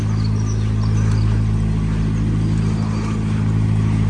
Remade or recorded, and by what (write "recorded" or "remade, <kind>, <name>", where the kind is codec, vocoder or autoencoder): recorded